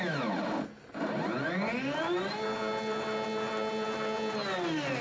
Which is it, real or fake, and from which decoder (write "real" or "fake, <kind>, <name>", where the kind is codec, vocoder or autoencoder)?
real